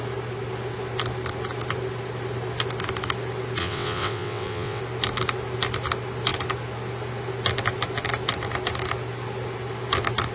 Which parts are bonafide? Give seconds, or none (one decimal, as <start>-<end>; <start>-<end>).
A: 0.0-3.6; 4.8-10.3